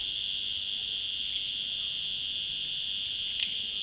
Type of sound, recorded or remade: recorded